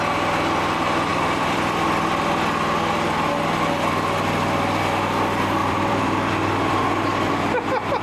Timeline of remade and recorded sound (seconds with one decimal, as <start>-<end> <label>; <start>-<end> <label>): 0.0-1.1 recorded; 1.1-3.3 remade; 3.3-5.6 recorded; 5.6-7.3 remade; 7.3-8.0 recorded